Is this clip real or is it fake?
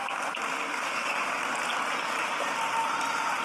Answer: real